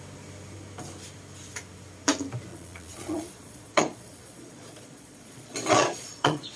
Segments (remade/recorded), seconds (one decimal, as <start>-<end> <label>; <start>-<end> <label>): 0.0-2.5 recorded; 2.5-6.6 remade